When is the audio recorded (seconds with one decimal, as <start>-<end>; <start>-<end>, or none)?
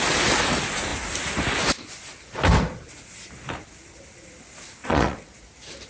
0.0-4.8; 5.5-5.9